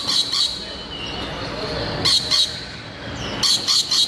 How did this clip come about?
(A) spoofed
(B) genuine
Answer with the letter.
B